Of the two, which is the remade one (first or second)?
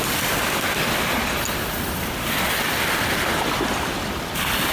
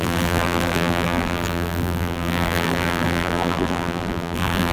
second